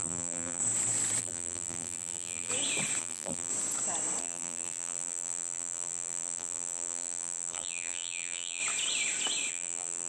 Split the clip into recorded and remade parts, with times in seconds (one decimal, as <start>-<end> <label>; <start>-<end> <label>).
0.0-0.6 remade; 0.6-1.2 recorded; 1.2-2.5 remade; 2.5-3.0 recorded; 3.0-3.5 remade; 3.5-4.2 recorded; 4.2-8.6 remade; 8.6-9.5 recorded; 9.5-10.1 remade